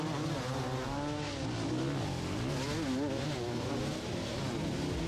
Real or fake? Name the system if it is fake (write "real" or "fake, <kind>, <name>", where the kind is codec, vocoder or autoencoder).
real